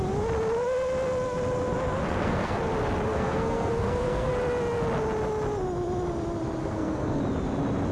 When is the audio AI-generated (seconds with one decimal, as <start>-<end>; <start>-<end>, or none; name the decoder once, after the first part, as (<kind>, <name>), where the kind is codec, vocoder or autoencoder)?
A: 2.0-2.6 (codec, SNAC); 3.1-4.3; 6.6-7.2